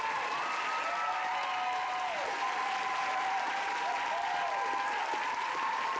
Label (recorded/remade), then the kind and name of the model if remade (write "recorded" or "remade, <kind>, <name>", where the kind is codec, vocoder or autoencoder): recorded